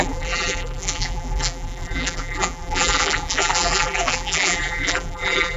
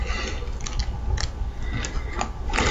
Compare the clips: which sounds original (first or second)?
second